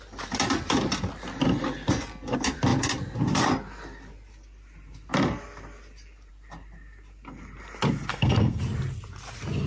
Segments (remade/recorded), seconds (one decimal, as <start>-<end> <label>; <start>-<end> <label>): 0.0-8.1 recorded; 8.1-8.6 remade; 8.6-9.7 recorded